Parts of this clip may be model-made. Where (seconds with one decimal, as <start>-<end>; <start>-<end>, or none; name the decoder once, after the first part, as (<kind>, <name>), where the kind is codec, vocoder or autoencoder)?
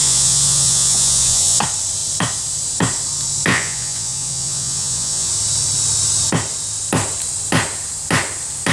0.0-1.6 (vocoder, Vocos); 3.5-5.3